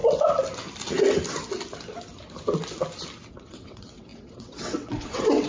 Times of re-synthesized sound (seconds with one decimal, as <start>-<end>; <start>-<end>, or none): 3.3-5.5